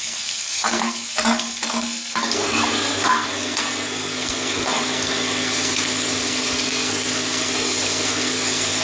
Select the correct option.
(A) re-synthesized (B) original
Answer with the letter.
A